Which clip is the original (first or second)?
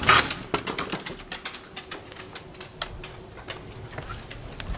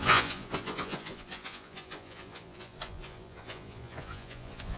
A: first